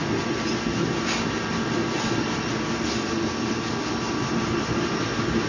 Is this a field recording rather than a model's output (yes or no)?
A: yes